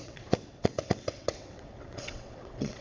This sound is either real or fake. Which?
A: fake